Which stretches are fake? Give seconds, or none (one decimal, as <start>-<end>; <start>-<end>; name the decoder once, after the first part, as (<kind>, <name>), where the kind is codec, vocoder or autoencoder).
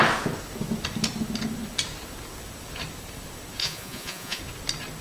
3.6-4.4 (vocoder, Vocos)